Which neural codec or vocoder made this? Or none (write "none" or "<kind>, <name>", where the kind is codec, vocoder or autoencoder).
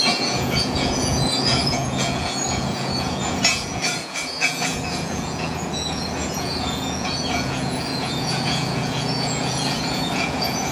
vocoder, Vocos